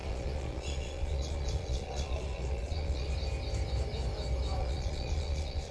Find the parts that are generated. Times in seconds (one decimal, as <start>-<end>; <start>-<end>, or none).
0.0-3.1; 4.6-5.7